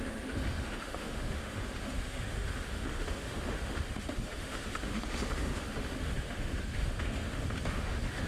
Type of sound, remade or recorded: remade